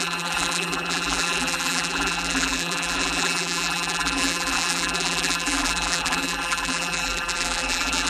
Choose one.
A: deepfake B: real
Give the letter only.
A